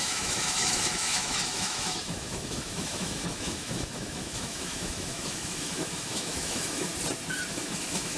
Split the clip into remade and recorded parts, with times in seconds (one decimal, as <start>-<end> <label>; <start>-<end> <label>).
0.0-6.9 remade; 6.9-7.5 recorded; 7.5-8.2 remade